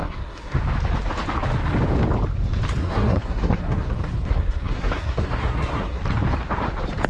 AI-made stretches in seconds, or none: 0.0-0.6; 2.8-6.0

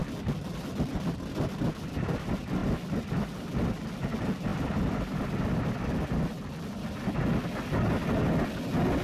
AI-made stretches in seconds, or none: 4.5-5.2